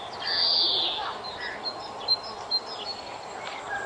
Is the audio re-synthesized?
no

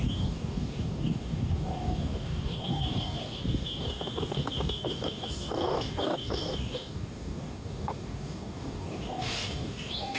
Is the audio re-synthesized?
yes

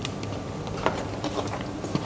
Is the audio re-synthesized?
no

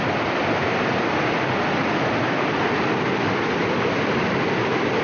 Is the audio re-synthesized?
no